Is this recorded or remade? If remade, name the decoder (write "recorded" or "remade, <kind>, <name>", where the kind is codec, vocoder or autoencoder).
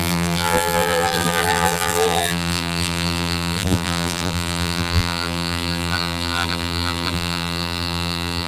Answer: remade, vocoder, BigVGAN v2